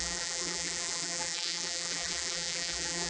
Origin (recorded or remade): remade